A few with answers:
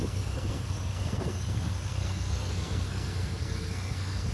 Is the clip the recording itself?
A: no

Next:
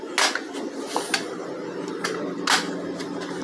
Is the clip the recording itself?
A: yes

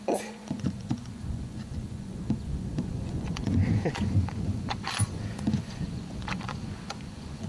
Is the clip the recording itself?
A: no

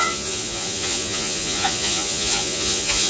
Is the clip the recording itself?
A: no